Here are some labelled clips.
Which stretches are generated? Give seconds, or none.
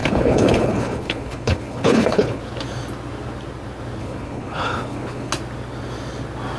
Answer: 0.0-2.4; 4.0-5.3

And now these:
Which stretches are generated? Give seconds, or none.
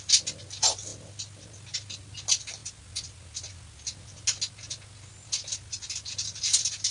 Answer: none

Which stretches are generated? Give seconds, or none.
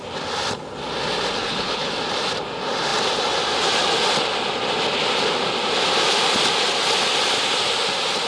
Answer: 1.4-1.9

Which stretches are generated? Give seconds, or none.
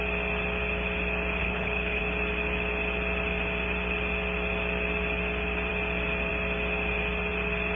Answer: 1.4-2.0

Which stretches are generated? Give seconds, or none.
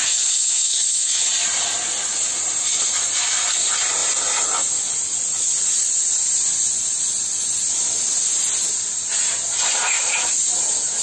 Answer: 0.0-1.3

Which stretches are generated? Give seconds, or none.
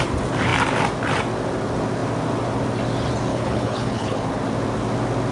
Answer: 3.3-4.4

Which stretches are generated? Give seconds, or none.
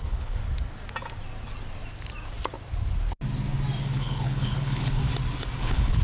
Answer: 0.0-0.4; 3.8-5.0; 5.6-6.0